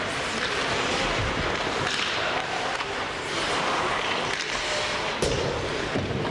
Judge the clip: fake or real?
real